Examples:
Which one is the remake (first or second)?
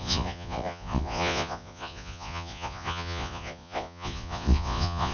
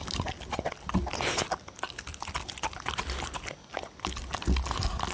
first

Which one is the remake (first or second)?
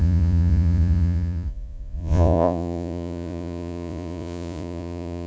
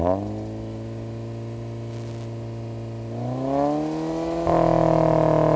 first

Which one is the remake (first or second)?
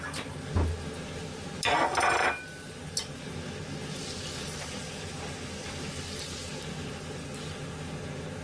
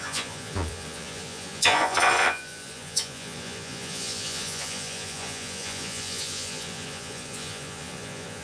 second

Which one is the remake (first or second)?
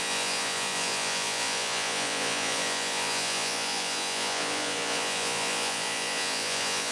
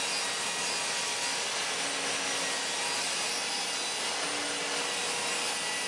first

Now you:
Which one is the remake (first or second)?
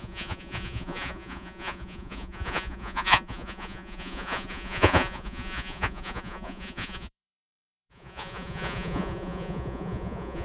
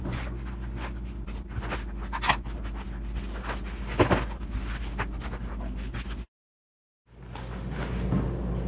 first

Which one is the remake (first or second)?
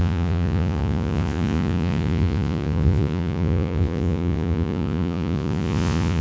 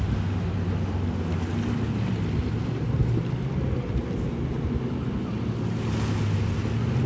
first